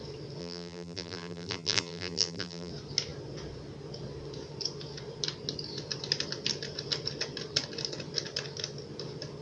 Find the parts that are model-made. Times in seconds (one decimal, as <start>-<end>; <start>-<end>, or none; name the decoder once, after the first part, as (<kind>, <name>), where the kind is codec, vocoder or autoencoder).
0.4-2.7 (vocoder, BigVGAN v2)